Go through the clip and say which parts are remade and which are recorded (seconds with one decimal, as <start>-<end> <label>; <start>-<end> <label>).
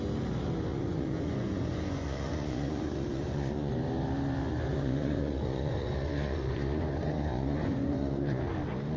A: 0.0-0.7 recorded; 0.7-3.7 remade; 3.7-4.7 recorded; 4.7-8.4 remade; 8.4-9.0 recorded